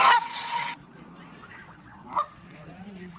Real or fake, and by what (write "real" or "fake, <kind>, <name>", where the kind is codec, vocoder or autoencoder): fake, vocoder, Vocos